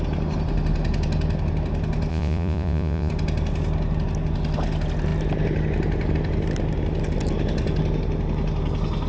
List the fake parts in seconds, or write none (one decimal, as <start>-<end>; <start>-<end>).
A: 2.1-3.1